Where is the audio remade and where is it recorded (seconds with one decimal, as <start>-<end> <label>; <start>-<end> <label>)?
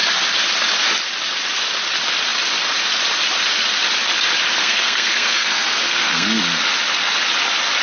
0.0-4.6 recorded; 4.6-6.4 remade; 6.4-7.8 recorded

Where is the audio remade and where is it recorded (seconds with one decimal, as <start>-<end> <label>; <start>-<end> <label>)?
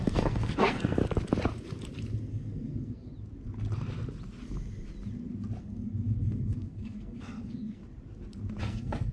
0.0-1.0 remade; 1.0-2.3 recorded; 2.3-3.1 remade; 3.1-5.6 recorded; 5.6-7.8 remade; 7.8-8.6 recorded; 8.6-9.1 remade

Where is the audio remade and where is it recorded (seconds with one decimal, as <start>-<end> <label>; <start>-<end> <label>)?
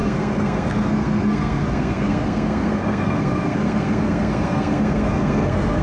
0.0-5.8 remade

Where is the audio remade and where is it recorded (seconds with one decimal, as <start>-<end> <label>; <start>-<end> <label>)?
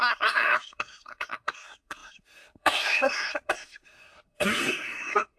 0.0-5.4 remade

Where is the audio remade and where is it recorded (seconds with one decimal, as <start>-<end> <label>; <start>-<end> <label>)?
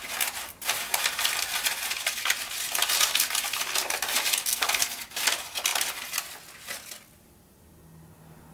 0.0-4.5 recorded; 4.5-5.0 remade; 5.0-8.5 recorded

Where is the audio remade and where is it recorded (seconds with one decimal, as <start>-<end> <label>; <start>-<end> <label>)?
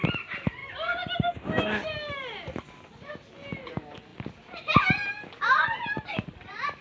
0.0-6.8 recorded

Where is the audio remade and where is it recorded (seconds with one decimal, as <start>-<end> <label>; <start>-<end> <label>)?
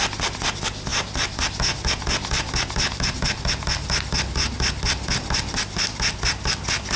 0.0-7.0 recorded